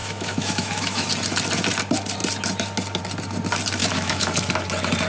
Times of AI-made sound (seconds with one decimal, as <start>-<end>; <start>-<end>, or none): 0.0-1.1; 3.8-4.5

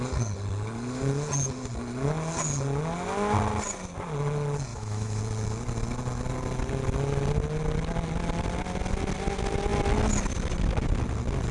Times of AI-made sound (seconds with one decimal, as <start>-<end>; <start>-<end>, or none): 4.7-5.2

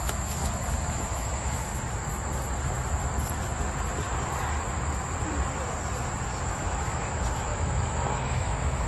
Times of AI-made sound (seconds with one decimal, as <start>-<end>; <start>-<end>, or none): 0.0-0.4; 0.9-1.7; 6.5-8.9

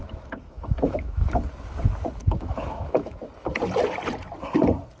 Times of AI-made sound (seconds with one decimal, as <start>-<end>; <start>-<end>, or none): 0.0-1.3; 2.2-3.2